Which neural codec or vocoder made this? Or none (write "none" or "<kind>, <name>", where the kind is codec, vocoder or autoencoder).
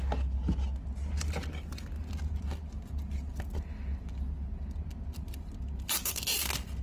none